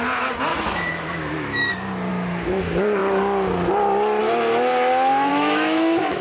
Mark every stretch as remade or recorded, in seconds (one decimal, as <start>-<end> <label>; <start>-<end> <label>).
0.0-0.5 recorded; 0.5-1.7 remade; 1.7-2.1 recorded; 2.1-2.6 remade; 2.6-5.3 recorded; 5.3-6.2 remade